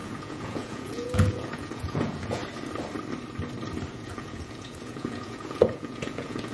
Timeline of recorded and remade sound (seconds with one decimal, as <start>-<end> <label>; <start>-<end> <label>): 0.0-2.4 remade; 2.4-3.9 recorded; 3.9-6.5 remade